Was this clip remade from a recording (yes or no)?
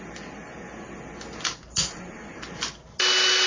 no